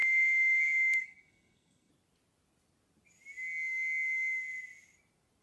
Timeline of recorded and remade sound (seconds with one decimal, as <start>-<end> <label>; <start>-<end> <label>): 0.0-1.9 remade; 1.9-5.4 recorded